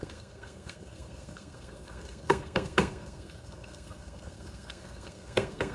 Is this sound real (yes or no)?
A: no